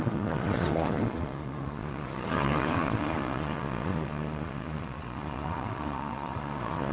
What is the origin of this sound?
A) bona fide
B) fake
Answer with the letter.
B